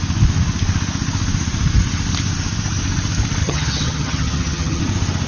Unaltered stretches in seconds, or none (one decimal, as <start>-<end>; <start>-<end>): 0.0-3.4; 4.8-5.3